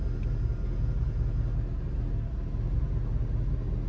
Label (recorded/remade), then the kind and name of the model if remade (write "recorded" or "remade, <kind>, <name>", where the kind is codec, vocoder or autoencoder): recorded